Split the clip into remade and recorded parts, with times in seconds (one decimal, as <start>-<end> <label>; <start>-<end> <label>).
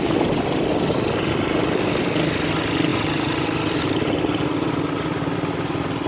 0.0-6.1 recorded